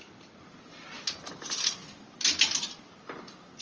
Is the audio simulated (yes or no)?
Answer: no